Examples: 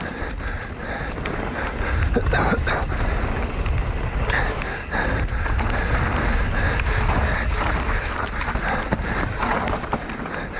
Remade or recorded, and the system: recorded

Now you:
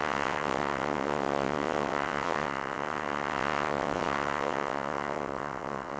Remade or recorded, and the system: remade, vocoder, WaveNeXt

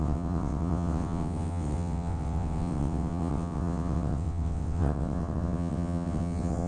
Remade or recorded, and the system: remade, vocoder, WaveNeXt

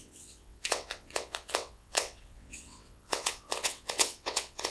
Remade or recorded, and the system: remade, vocoder, WaveNeXt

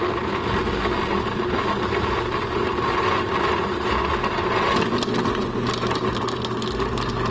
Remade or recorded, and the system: recorded